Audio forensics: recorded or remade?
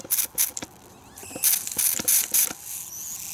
recorded